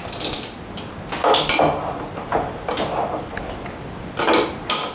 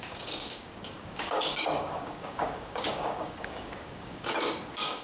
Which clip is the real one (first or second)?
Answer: first